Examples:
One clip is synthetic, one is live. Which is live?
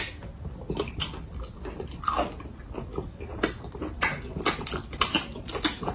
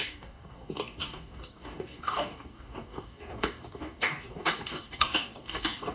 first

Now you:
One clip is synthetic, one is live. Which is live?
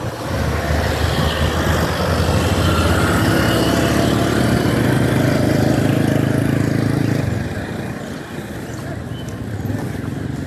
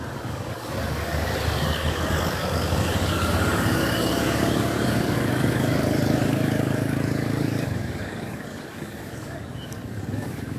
first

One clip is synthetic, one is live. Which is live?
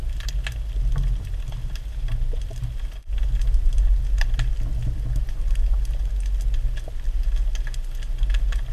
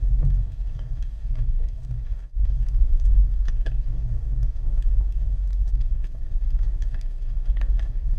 first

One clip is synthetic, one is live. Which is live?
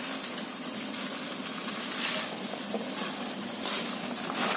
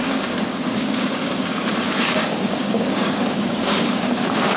first